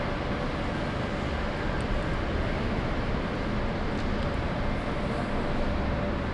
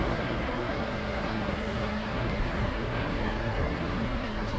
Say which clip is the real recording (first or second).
first